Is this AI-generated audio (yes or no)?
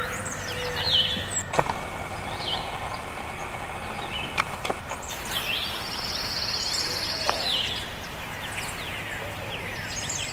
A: no